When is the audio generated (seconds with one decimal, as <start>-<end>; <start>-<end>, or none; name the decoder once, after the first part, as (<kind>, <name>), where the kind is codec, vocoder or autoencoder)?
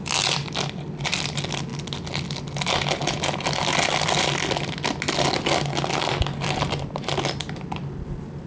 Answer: none